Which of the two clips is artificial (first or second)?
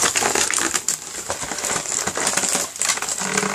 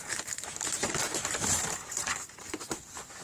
second